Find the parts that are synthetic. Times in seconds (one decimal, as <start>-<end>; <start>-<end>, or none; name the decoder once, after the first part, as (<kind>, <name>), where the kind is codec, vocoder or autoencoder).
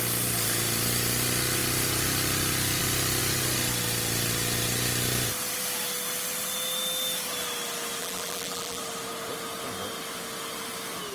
8.0-8.8 (vocoder, BigVGAN v2)